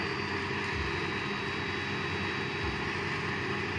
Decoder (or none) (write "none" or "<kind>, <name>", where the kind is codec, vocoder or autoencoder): none